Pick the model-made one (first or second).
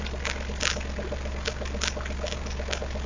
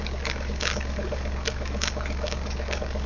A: second